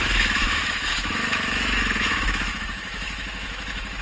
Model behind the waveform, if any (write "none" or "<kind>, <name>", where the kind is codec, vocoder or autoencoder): autoencoder, DAC-VAE